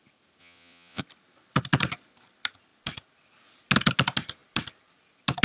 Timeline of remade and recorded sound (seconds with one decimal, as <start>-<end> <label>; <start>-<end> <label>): 0.0-0.4 recorded; 0.4-1.0 remade; 1.0-5.4 recorded